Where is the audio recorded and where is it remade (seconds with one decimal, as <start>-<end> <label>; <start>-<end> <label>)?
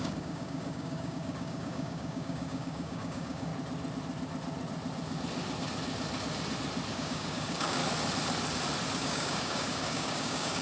0.0-3.5 remade; 3.5-6.9 recorded; 6.9-7.8 remade; 7.8-9.0 recorded; 9.0-10.6 remade